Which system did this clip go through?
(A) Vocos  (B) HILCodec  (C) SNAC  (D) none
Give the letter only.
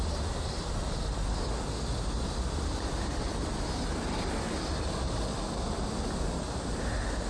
D